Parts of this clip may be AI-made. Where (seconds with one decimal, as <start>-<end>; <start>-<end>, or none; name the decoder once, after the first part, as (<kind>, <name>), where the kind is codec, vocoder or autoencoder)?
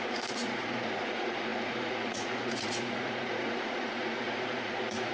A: 0.0-5.1 (vocoder, Vocos)